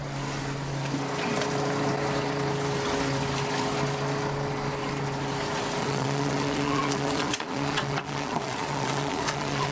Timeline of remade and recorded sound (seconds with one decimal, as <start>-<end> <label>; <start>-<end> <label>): 0.0-5.8 recorded; 5.8-9.7 remade